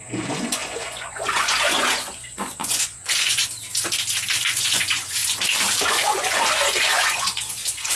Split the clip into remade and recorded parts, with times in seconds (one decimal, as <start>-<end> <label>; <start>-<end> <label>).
0.0-3.4 remade; 3.4-4.4 recorded; 4.4-5.2 remade; 5.2-5.9 recorded; 5.9-8.0 remade